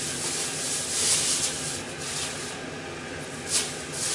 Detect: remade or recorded recorded